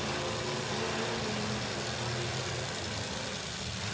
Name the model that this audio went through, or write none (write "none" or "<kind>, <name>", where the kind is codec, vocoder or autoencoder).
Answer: none